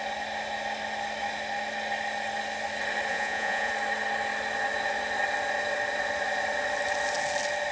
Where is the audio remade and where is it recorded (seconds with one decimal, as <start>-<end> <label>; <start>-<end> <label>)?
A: 0.0-3.1 recorded; 3.1-3.7 remade; 3.7-7.7 recorded